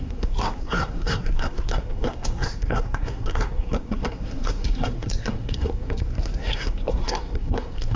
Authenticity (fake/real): fake